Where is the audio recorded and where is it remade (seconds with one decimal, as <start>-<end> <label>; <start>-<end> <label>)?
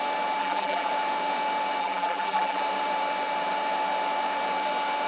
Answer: 0.0-0.4 recorded; 0.4-0.9 remade; 0.9-1.8 recorded; 1.8-2.6 remade; 2.6-5.1 recorded